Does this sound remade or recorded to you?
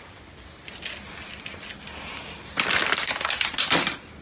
recorded